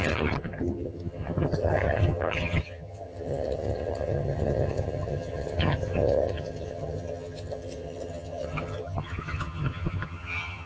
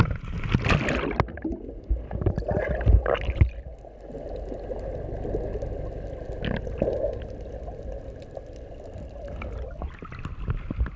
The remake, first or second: first